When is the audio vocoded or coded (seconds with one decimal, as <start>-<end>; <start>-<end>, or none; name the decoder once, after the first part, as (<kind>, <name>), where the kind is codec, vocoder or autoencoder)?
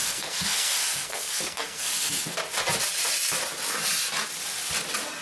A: 0.0-2.4 (codec, SNAC)